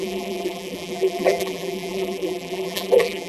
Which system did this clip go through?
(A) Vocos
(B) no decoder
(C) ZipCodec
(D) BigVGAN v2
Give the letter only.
D